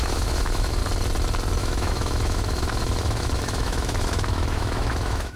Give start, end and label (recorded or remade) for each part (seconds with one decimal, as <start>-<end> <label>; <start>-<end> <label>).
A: 0.0-0.8 remade; 0.8-1.6 recorded; 1.6-5.4 remade